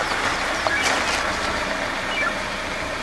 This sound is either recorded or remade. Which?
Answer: recorded